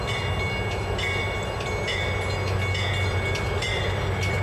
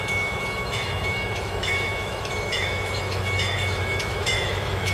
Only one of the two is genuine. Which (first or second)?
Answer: first